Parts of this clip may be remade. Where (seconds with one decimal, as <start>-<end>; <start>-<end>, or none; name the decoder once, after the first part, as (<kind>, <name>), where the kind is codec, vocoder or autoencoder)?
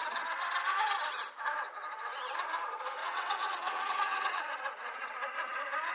3.0-4.5 (vocoder, WaveNeXt)